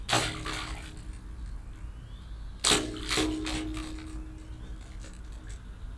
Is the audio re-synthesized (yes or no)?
no